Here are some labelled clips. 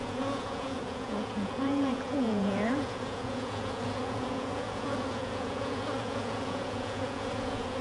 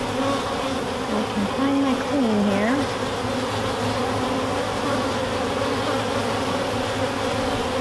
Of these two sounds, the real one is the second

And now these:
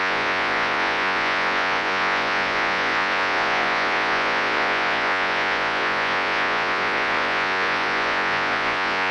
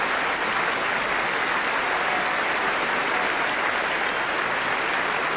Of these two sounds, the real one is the second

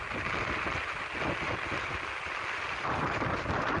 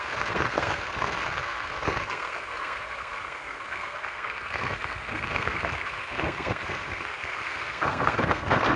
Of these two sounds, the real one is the first